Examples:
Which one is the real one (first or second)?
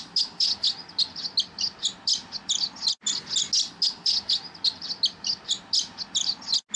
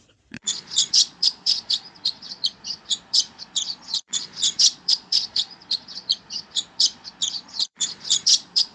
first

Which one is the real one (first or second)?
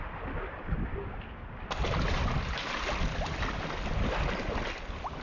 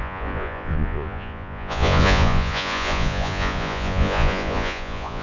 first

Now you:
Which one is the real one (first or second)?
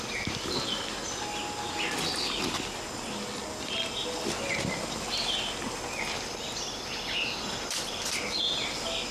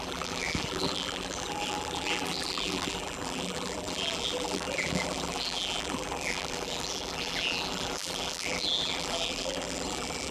first